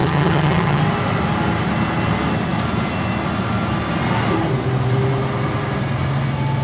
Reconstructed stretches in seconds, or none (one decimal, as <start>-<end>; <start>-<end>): 0.0-0.8